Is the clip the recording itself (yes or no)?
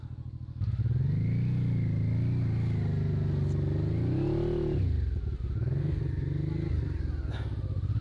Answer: yes